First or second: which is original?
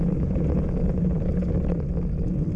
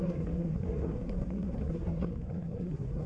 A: first